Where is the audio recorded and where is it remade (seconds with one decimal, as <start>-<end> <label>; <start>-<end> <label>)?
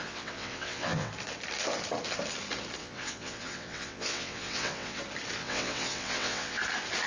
0.0-1.1 remade; 1.1-2.8 recorded; 2.8-5.0 remade; 5.0-5.4 recorded; 5.4-6.6 remade; 6.6-7.1 recorded